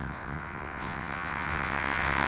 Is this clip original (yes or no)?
no